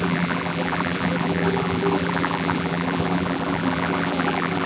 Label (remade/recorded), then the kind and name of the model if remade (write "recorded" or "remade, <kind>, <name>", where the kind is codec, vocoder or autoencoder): remade, vocoder, BigVGAN v2